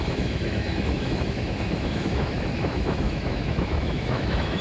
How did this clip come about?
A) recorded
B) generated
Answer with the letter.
B